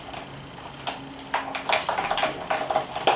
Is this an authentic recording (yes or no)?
yes